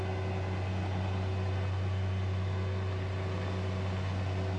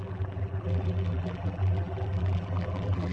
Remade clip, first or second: second